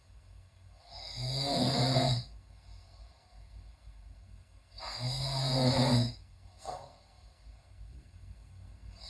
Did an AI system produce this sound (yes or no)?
yes